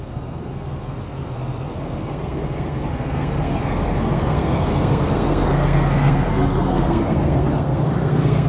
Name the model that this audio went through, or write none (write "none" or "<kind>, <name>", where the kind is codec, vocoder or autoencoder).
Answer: codec, SNAC